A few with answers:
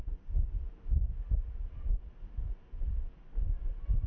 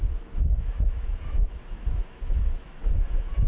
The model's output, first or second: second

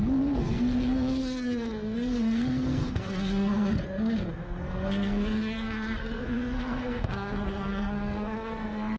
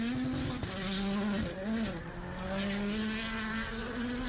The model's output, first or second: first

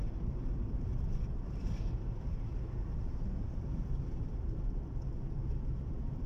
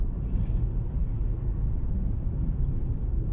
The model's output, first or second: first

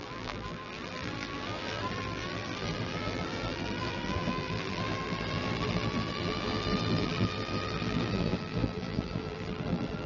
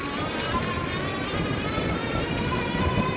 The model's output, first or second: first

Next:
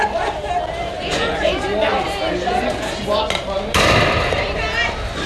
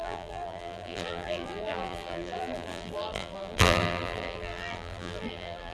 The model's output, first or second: second